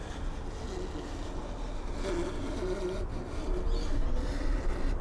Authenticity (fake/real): real